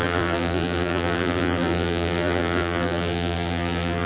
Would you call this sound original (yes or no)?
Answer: no